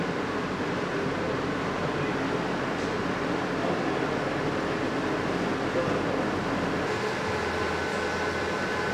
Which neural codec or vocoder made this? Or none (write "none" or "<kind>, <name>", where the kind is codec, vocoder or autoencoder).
none